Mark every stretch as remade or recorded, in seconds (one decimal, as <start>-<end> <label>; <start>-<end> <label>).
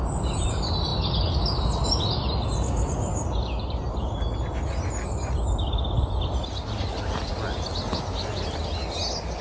0.0-9.4 recorded